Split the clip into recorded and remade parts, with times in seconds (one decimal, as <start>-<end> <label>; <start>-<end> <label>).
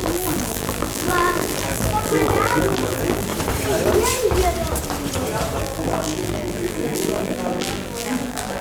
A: 0.0-3.3 remade; 3.3-5.6 recorded; 5.6-8.6 remade